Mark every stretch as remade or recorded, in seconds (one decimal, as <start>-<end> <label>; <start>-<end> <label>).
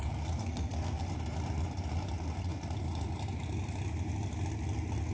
0.0-0.4 recorded; 0.4-1.0 remade; 1.0-5.1 recorded